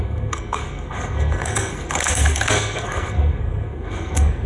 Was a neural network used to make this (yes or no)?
yes